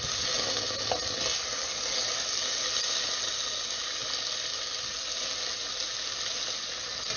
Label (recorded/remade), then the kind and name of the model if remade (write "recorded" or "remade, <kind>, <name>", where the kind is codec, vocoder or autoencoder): recorded